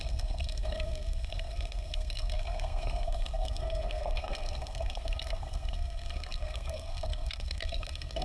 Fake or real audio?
fake